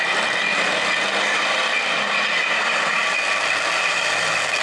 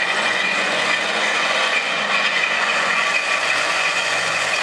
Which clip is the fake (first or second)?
second